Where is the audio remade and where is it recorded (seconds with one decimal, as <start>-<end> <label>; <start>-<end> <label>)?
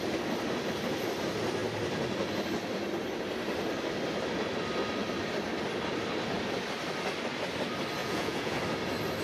0.0-8.0 recorded; 8.0-8.6 remade; 8.6-9.2 recorded